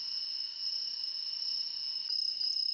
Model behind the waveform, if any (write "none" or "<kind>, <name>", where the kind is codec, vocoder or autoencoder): none